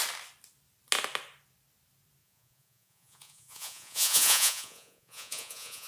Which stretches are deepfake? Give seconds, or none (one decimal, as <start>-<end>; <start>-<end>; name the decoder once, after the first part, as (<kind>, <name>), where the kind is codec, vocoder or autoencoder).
2.2-5.9 (vocoder, Vocos)